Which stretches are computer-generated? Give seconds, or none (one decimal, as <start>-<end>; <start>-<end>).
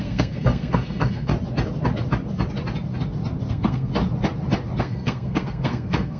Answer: 0.0-1.3; 3.5-3.9; 4.8-6.2